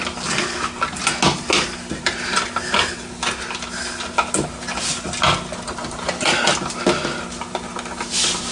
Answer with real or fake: real